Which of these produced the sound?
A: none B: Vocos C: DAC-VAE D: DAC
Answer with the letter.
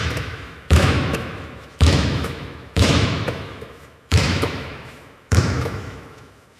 C